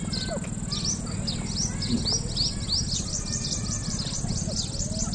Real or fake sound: real